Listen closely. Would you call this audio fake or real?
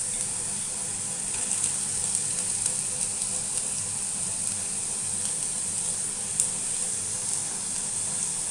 real